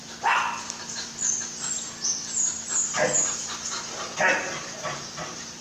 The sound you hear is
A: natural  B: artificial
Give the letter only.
A